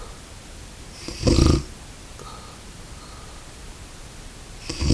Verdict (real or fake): real